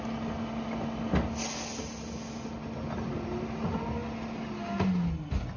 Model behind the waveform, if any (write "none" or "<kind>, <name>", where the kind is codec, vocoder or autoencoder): none